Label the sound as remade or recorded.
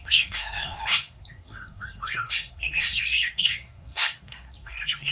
remade